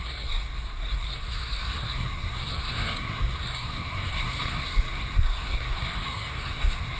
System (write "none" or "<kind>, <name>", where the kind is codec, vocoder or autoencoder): codec, SNAC